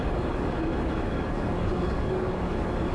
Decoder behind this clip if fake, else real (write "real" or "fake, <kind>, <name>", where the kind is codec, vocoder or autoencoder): fake, codec, DAC